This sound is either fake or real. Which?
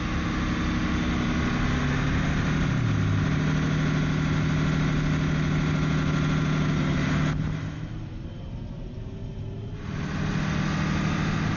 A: real